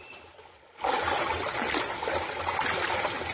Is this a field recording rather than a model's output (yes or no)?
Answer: yes